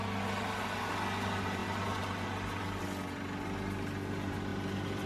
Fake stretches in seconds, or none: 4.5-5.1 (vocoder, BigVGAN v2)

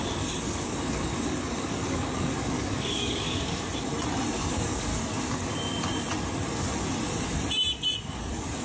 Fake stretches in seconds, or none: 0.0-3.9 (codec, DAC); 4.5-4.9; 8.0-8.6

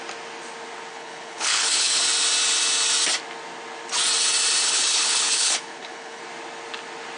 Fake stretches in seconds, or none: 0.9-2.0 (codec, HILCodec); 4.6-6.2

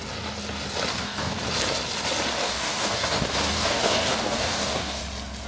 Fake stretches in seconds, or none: 0.9-1.4 (codec, DAC); 2.4-5.0

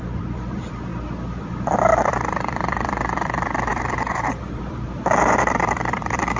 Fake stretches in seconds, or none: 0.0-0.9 (vocoder, BigVGAN v2); 1.4-6.4

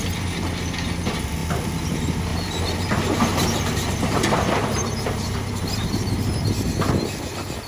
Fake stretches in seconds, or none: 2.3-6.5 (vocoder, BigVGAN v2)